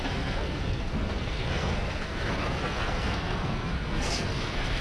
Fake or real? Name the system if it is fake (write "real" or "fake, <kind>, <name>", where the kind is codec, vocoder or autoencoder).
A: fake, codec, SNAC